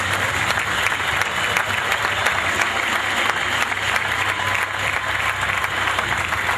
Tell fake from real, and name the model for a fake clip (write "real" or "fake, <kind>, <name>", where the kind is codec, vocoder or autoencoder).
real